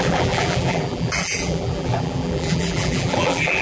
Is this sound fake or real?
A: fake